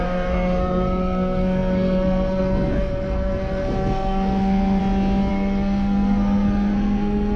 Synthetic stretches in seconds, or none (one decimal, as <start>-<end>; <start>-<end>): 0.0-4.8; 5.3-7.4